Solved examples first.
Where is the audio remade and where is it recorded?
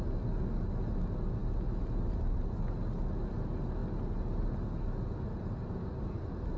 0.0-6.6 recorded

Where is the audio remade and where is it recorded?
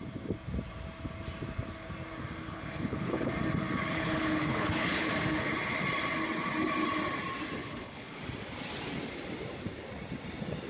0.0-2.4 recorded; 2.4-3.3 remade; 3.3-3.8 recorded; 3.8-5.1 remade; 5.1-7.6 recorded; 7.6-8.2 remade; 8.2-10.7 recorded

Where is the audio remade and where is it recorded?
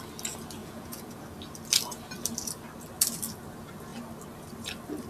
0.0-0.6 recorded; 0.6-1.2 remade; 1.2-5.1 recorded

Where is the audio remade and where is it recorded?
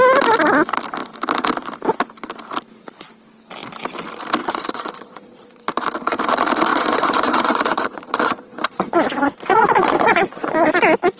0.0-4.4 recorded; 4.4-5.6 remade; 5.6-6.7 recorded; 6.7-10.7 remade; 10.7-11.2 recorded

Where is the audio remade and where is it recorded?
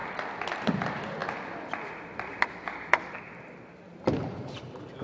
0.0-1.2 recorded; 1.2-4.2 remade; 4.2-5.0 recorded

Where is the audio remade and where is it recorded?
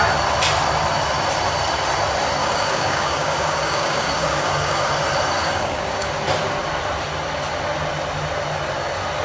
0.0-2.4 recorded; 2.4-5.0 remade; 5.0-5.4 recorded; 5.4-6.1 remade; 6.1-9.2 recorded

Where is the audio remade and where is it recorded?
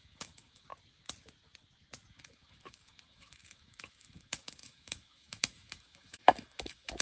0.0-0.7 remade; 0.7-2.1 recorded; 2.1-7.0 remade